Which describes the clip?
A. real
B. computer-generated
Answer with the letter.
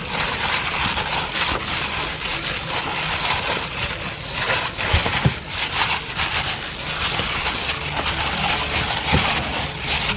A